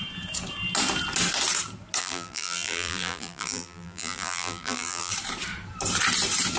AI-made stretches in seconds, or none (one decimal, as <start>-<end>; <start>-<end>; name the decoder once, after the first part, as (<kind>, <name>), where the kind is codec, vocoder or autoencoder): 2.0-5.1 (vocoder, BigVGAN v2)